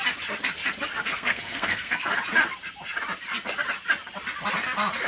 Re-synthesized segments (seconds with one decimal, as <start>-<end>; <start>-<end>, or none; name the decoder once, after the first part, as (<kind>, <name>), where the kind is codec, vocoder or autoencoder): 1.1-2.1 (codec, SNAC)